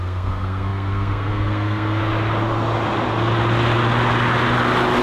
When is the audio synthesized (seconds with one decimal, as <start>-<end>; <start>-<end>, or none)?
0.0-2.0